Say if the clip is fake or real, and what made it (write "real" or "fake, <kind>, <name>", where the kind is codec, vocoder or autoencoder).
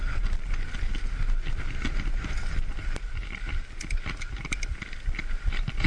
real